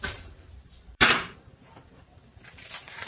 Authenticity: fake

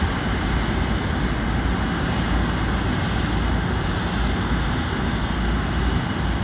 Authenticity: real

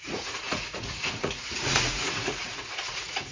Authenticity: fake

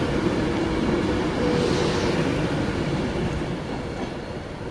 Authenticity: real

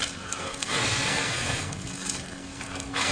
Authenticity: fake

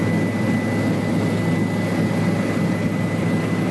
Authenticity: real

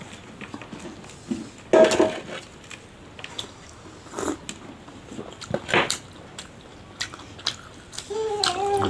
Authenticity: real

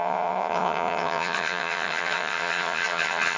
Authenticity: fake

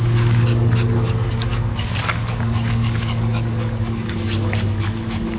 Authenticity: fake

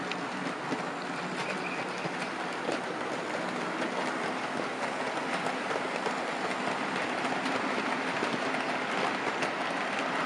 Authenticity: real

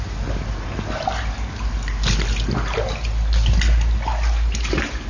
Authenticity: real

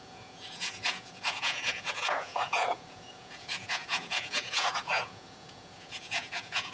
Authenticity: fake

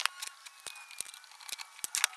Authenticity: real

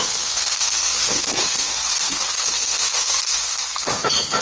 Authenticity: fake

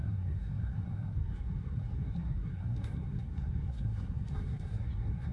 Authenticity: fake